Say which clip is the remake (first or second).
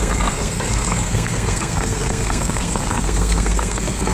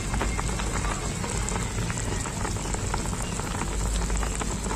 first